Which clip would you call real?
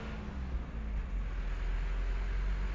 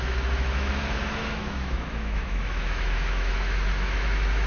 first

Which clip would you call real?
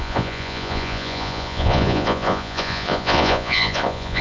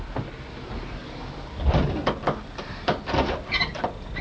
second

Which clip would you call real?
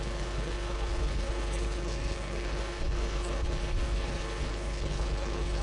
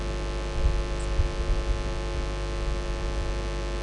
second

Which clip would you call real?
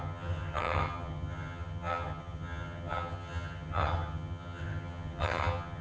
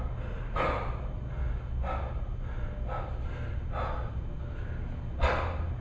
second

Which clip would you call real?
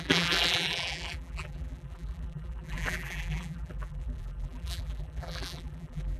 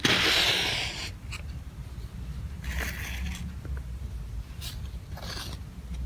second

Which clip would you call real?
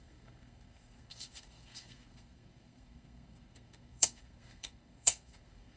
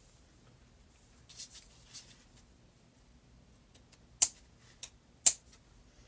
second